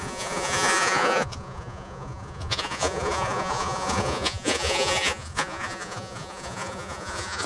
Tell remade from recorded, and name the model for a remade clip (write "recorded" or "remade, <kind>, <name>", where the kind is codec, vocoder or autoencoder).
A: remade, vocoder, Vocos